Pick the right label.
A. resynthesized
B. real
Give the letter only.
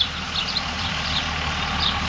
A